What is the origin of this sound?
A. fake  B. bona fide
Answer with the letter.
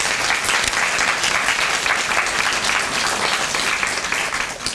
B